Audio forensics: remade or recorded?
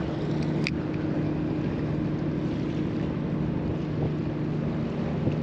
recorded